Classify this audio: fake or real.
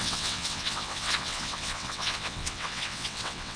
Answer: fake